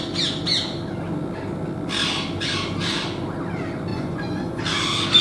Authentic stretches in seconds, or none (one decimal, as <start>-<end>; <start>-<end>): 0.0-3.9; 4.6-5.2